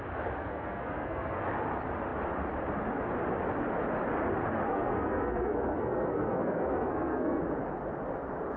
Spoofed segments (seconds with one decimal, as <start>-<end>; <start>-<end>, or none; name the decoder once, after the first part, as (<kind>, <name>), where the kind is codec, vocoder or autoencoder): 0.4-1.4 (codec, SNAC); 4.7-7.4